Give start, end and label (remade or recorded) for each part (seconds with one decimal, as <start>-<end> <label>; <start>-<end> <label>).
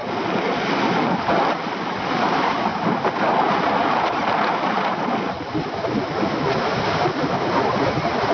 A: 0.0-8.3 recorded